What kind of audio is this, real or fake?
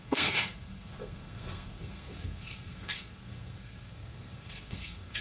fake